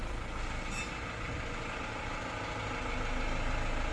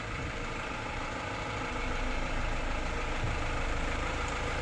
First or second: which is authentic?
first